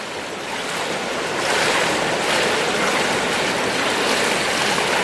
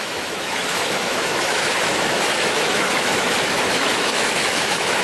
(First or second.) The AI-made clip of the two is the second